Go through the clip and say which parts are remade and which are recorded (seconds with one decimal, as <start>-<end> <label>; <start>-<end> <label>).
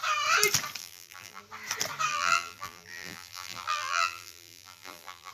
0.0-0.8 recorded; 0.8-1.4 remade; 1.4-2.1 recorded; 2.1-5.3 remade